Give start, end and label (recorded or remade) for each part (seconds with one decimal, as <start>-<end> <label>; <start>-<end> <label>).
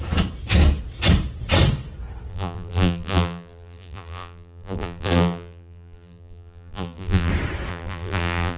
0.0-2.3 recorded; 2.3-7.3 remade; 7.3-7.7 recorded; 7.7-8.6 remade